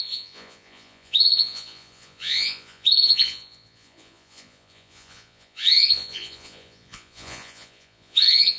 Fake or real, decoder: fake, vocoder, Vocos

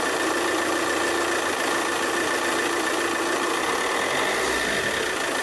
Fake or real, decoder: real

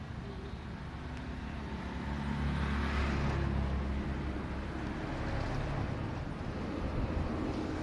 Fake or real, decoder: real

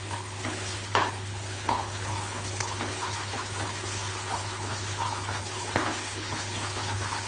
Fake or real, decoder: fake, codec, HILCodec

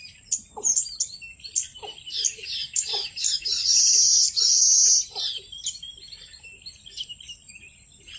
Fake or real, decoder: real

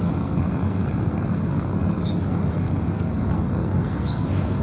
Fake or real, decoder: fake, codec, SNAC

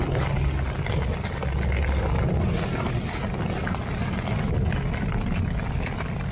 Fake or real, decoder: real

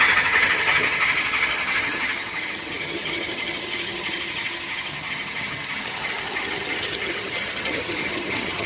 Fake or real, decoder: fake, vocoder, HiFi-GAN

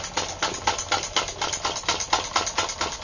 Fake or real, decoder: real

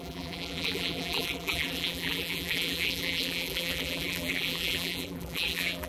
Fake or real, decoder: fake, vocoder, BigVGAN v2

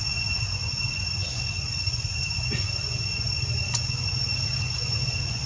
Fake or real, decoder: fake, vocoder, Vocos